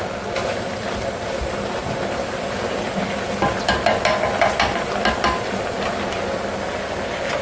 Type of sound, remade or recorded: recorded